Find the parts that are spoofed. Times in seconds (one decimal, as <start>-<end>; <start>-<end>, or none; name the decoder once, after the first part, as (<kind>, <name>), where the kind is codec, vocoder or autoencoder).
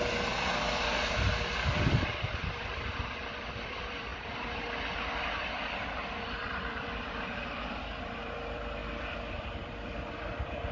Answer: 0.0-10.7 (vocoder, BigVGAN v2)